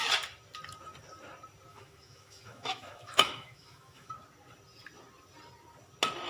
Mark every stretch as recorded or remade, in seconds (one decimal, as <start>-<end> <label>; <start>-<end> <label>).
0.0-1.7 recorded; 1.7-4.1 remade; 4.1-6.3 recorded